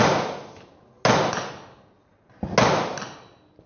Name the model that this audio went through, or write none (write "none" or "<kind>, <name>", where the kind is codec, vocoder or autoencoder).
none